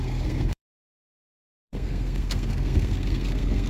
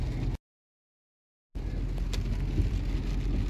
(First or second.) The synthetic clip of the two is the first